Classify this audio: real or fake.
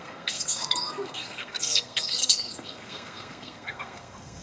fake